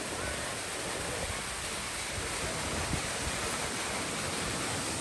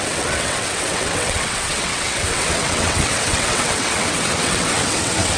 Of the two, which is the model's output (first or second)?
second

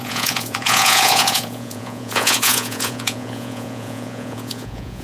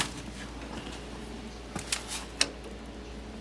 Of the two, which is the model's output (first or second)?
first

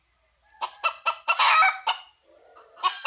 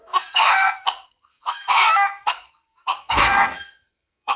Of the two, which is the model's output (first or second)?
second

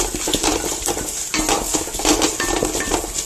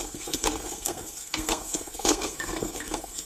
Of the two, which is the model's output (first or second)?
second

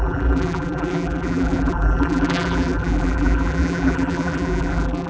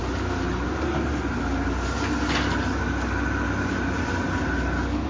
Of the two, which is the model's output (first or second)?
first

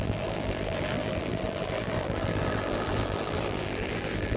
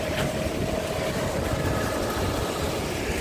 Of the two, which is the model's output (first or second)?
first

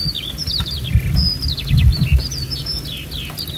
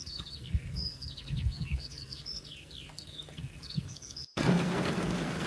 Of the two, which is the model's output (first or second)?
second